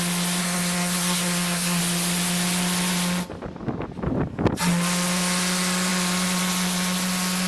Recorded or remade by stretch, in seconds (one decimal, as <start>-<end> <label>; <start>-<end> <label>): 0.0-0.4 recorded; 0.4-1.8 remade; 1.8-7.5 recorded